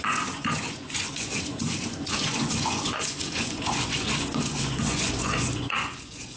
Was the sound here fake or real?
fake